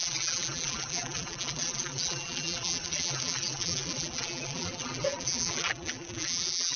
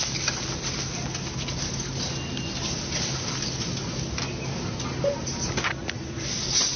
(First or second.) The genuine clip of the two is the second